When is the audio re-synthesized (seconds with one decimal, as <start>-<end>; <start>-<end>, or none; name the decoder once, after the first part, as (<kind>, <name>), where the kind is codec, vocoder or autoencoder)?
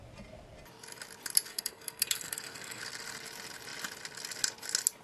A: 1.5-2.8 (codec, SNAC)